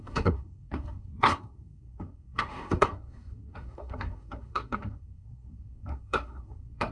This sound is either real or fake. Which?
fake